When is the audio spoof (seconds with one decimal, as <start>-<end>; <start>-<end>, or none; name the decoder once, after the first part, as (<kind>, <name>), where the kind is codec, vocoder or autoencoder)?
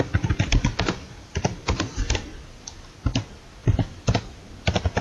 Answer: none